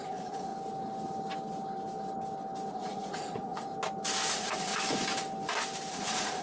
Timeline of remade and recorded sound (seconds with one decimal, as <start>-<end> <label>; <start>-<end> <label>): 0.0-0.5 remade; 0.5-2.7 recorded; 2.7-3.7 remade; 3.7-4.3 recorded; 4.3-4.7 remade; 4.7-5.9 recorded; 5.9-6.4 remade

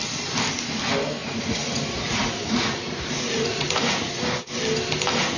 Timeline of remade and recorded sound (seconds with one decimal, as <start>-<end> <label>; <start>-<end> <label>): 0.0-1.2 recorded; 1.2-4.1 remade; 4.1-5.4 recorded